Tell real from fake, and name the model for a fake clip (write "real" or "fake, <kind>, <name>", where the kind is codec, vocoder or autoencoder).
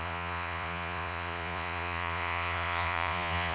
fake, vocoder, Vocos